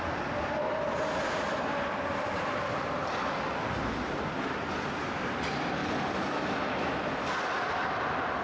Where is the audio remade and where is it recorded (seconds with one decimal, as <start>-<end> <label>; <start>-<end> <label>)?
0.0-8.4 recorded